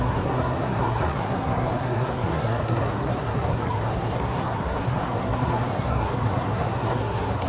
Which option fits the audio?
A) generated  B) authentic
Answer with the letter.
A